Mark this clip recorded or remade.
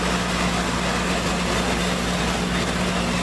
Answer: recorded